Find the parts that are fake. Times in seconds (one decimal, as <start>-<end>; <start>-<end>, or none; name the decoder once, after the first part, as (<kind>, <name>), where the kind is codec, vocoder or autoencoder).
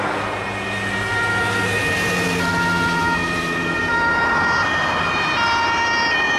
none